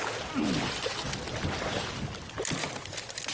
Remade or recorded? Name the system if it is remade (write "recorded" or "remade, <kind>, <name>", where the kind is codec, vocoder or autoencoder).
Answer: recorded